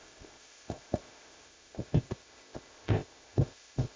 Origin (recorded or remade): remade